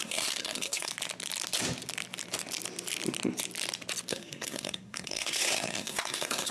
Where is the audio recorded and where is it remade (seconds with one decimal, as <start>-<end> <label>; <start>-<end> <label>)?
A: 0.0-0.9 remade; 0.9-4.1 recorded; 4.1-6.5 remade